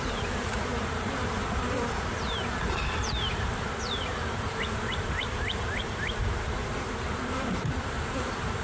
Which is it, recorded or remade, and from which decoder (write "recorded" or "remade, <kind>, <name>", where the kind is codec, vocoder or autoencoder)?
remade, vocoder, BigVGAN v2